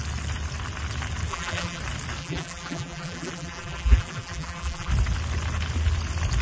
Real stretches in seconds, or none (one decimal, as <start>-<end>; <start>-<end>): 0.0-1.3; 1.8-2.2; 4.9-6.4